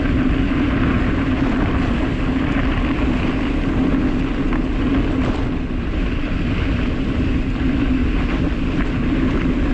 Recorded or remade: recorded